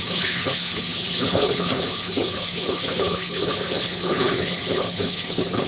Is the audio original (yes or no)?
no